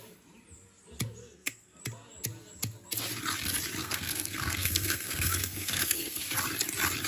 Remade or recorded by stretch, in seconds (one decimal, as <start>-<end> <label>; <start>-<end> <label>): 0.0-1.2 recorded; 1.2-1.8 remade; 1.8-3.8 recorded; 3.8-6.2 remade; 6.2-7.1 recorded